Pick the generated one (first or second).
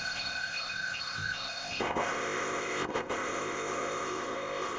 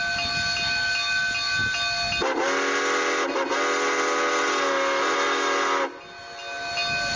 first